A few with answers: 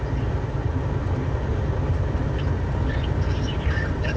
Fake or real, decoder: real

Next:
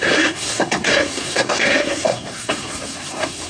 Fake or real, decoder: fake, codec, SNAC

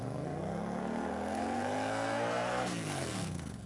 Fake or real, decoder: fake, codec, SNAC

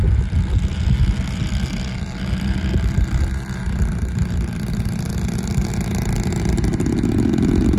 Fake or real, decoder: real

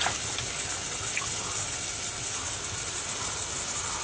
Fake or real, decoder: real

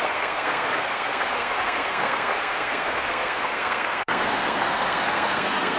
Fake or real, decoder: fake, codec, SNAC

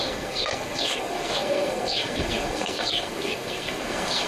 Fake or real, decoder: fake, codec, SNAC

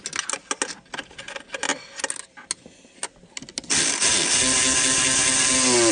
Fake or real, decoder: real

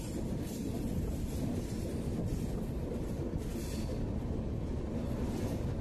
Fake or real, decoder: real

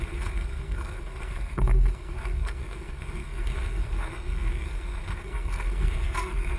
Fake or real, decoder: fake, codec, SNAC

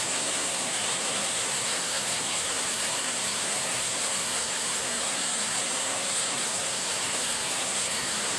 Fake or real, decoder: fake, codec, SNAC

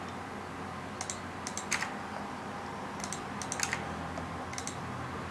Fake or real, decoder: real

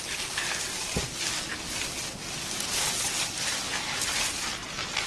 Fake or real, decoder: real